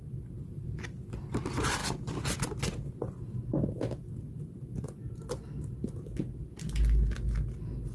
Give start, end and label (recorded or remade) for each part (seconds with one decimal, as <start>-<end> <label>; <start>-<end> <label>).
0.0-7.9 recorded